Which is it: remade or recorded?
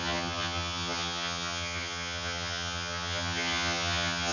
remade